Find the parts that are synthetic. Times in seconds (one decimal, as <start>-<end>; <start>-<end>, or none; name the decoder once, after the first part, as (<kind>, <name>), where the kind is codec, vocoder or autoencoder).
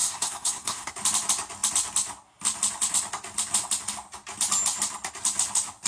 0.0-0.9 (codec, SNAC)